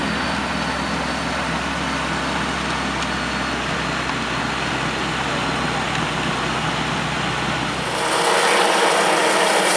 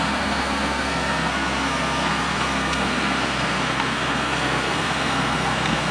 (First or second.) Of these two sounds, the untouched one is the first